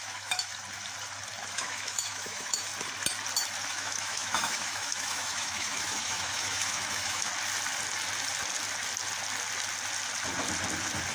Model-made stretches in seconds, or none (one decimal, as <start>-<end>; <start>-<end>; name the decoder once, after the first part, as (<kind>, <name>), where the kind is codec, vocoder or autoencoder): 0.0-0.5 (autoencoder, DAC-VAE); 1.4-2.7; 3.7-7.3